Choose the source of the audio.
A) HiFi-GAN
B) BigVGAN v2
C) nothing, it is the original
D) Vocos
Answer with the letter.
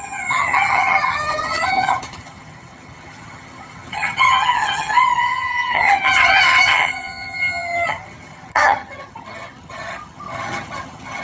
A